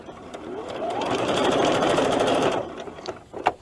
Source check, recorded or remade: remade